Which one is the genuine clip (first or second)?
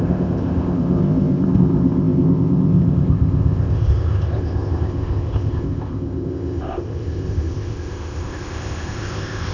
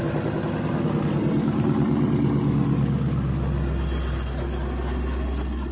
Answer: second